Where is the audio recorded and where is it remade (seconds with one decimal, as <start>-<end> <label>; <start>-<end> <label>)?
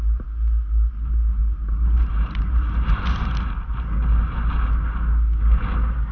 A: 0.0-1.4 recorded; 1.4-3.3 remade; 3.3-6.1 recorded